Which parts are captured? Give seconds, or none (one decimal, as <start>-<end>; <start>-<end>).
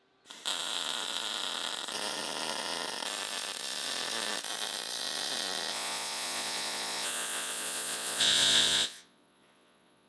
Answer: 0.0-5.7